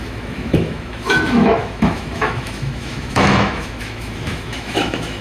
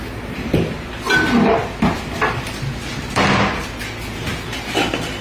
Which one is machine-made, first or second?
first